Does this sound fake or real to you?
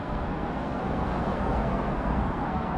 fake